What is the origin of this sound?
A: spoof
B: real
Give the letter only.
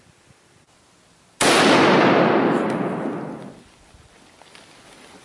B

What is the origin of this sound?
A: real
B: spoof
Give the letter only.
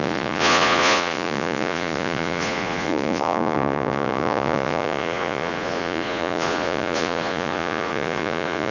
B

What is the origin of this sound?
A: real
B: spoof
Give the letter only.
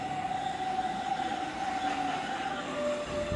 A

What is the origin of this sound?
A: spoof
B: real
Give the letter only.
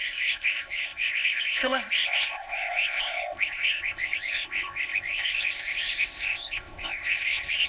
A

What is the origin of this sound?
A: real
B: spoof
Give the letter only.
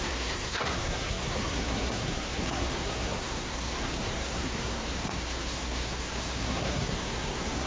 B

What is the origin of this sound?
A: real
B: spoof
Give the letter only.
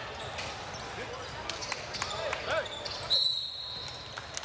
A